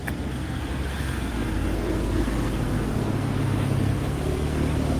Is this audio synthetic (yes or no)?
yes